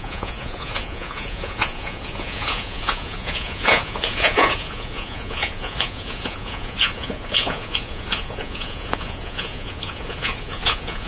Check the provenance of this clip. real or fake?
fake